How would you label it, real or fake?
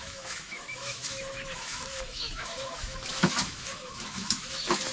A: fake